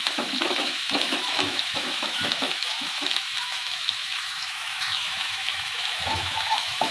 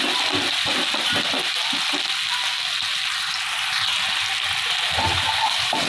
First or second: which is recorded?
second